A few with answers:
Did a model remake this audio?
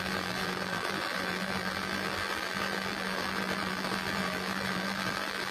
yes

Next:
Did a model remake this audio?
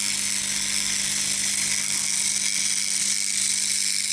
no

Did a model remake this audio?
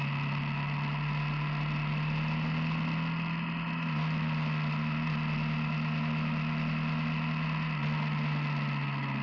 no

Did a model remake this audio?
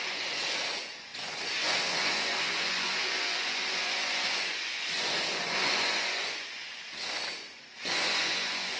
yes